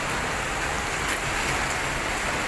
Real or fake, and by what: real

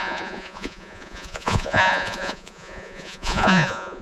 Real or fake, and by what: fake, vocoder, Vocos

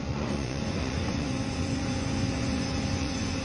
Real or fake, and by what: fake, vocoder, Vocos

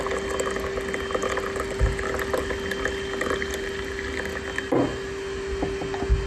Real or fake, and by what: real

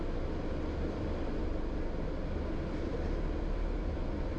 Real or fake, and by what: real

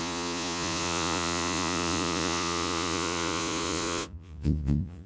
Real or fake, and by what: fake, vocoder, Vocos